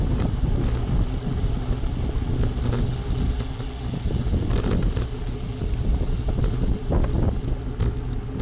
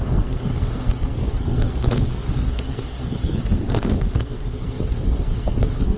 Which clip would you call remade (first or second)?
second